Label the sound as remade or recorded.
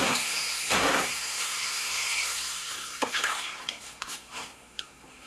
remade